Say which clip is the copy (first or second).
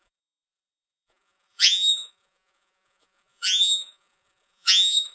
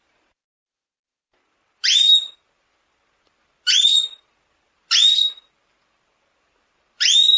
first